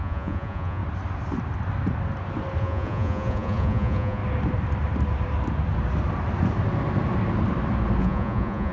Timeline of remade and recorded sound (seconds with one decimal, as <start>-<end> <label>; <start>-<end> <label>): 0.0-0.8 remade; 0.8-2.6 recorded; 2.6-4.2 remade; 4.2-8.0 recorded; 8.0-8.7 remade